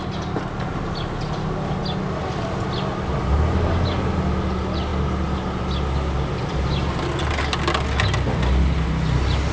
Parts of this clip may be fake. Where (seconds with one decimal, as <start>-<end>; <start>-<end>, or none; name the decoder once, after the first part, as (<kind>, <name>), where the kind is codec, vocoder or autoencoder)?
none

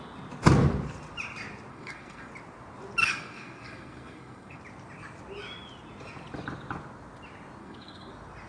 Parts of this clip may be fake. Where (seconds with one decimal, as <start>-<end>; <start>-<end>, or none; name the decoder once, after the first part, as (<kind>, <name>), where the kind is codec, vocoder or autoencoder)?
1.7-2.3 (codec, SNAC); 3.0-4.6; 7.6-8.1